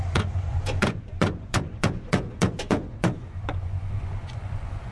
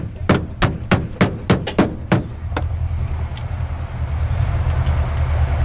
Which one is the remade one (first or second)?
first